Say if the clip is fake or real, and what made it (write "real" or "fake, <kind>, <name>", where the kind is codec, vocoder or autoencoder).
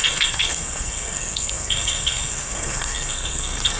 fake, codec, SNAC